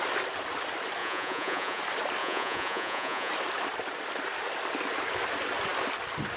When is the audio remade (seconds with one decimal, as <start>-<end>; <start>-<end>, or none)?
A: 1.0-1.8; 2.2-3.3